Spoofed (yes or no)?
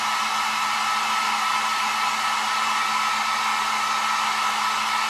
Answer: no